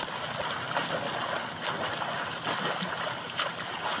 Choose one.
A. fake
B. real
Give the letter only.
B